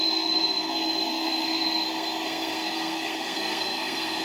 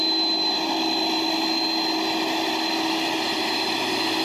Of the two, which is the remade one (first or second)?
first